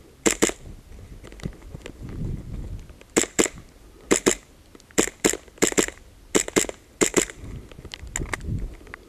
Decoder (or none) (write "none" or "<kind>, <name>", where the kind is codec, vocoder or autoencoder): none